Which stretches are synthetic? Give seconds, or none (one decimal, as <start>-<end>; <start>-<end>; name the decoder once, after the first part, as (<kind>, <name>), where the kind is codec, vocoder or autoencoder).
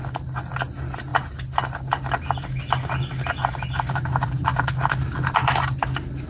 none